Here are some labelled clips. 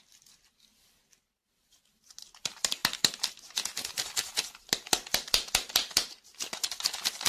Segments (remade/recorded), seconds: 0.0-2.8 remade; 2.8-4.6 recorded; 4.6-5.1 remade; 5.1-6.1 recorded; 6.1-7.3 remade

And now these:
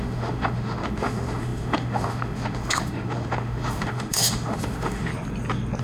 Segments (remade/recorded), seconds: 0.0-5.1 remade; 5.1-5.8 recorded

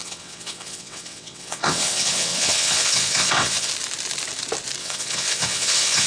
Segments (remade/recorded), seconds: 0.0-3.7 remade; 3.7-4.8 recorded; 4.8-6.1 remade

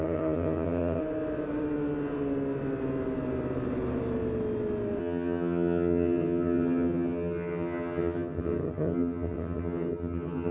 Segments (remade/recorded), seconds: 0.0-1.0 remade; 1.0-5.0 recorded; 5.0-10.5 remade

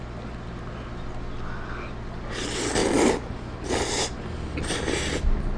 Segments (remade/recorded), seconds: 0.0-5.6 recorded

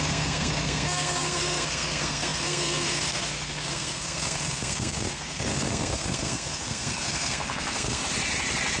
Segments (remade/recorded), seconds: 0.0-8.0 remade; 8.0-8.8 recorded